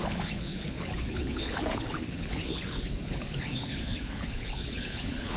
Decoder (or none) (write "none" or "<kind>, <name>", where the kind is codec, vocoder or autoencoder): codec, HILCodec